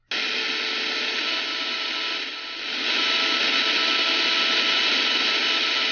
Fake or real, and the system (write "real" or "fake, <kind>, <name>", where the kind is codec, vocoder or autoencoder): real